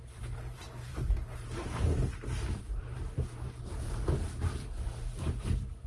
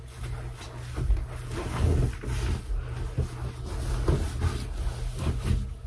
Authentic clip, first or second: second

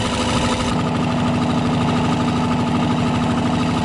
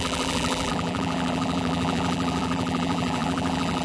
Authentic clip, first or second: first